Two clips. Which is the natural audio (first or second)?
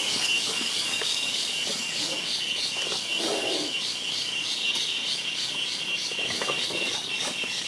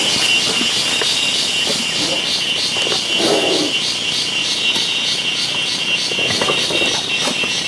second